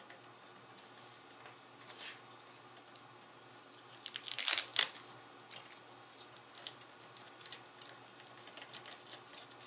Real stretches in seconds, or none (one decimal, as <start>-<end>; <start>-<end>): 0.0-9.7